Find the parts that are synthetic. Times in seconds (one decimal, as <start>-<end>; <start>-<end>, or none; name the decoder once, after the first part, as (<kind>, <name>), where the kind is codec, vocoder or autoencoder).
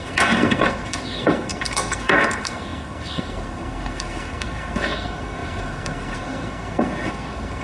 0.0-7.6 (codec, SNAC)